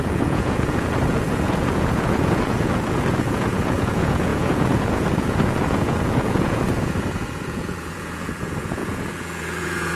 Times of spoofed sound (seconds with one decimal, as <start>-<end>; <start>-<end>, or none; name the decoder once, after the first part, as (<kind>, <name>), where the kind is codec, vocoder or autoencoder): 0.0-10.0 (vocoder, Vocos)